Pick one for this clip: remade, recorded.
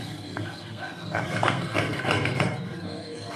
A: remade